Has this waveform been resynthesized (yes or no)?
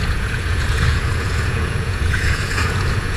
yes